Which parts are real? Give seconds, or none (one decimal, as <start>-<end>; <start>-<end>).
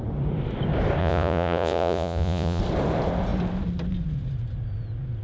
0.0-1.0; 2.6-5.2